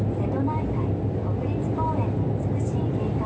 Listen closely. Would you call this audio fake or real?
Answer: real